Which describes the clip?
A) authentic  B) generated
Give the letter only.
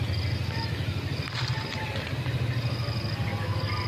A